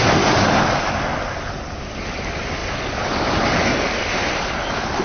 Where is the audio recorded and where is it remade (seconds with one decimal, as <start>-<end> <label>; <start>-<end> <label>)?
0.0-5.0 recorded